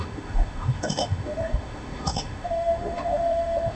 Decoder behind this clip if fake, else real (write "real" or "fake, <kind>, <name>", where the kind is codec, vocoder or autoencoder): fake, autoencoder, DAC-VAE